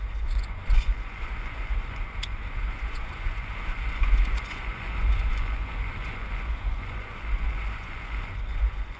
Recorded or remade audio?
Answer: remade